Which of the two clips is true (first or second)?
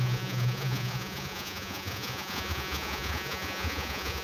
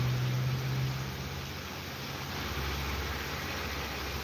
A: second